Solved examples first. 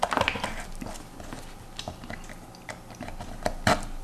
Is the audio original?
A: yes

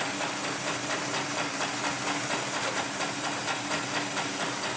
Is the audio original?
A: yes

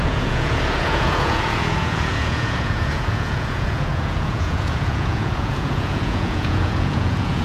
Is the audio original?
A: no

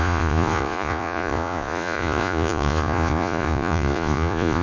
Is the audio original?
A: no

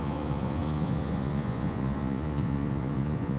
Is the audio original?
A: no